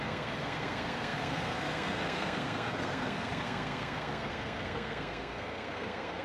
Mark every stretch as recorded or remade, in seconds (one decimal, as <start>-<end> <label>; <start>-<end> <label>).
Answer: 0.0-6.2 remade